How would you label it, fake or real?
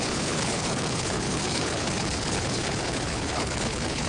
fake